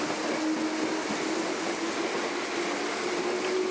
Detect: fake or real real